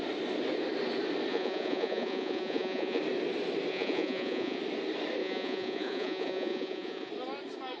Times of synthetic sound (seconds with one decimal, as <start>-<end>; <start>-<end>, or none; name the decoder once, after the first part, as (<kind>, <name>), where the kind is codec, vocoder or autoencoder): 1.3-3.0 (vocoder, Vocos); 3.7-4.6; 5.2-7.1